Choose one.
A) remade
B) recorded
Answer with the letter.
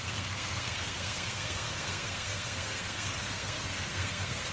A